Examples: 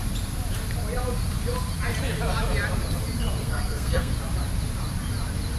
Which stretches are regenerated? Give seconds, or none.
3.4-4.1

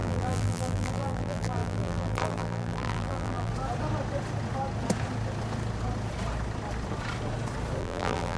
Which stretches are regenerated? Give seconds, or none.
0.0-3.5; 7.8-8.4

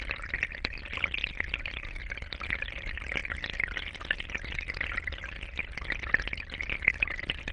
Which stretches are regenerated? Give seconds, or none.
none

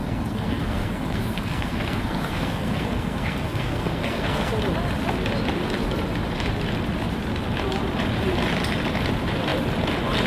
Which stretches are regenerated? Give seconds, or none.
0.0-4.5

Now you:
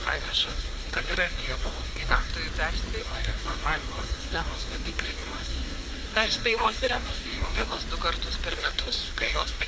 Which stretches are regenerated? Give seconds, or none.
0.0-2.3; 3.0-7.8; 8.5-9.7

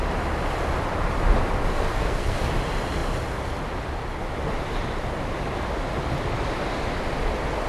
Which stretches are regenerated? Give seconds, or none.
1.7-2.4

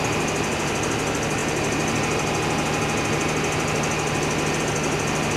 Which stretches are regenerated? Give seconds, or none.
none

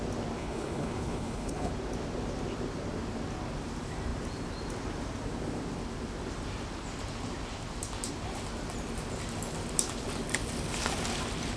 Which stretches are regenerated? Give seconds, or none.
0.4-1.7